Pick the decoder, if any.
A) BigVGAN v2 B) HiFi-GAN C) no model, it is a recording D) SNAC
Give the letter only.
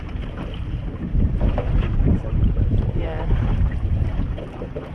A